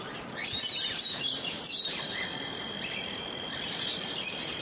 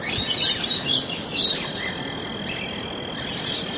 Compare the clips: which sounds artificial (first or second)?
first